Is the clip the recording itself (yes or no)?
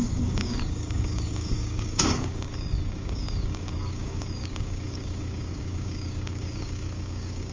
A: no